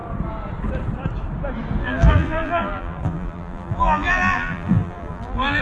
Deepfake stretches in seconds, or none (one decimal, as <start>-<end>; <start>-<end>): 1.8-5.6